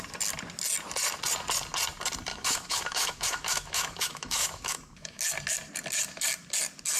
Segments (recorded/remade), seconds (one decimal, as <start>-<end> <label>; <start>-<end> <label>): 0.0-2.3 recorded; 2.3-5.2 remade; 5.2-7.0 recorded